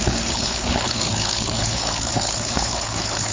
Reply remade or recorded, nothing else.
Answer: remade